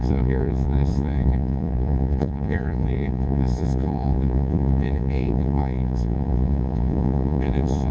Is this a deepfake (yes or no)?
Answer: yes